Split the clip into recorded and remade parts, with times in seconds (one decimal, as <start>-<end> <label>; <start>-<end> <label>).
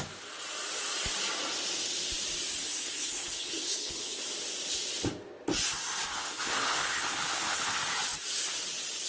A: 0.0-2.6 recorded; 2.6-4.2 remade; 4.2-6.1 recorded; 6.1-7.7 remade; 7.7-9.1 recorded